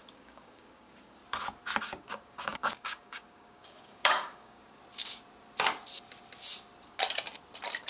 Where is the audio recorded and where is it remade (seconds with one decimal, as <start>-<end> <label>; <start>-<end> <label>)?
0.0-1.2 remade; 1.2-1.8 recorded; 1.8-4.8 remade; 4.8-7.9 recorded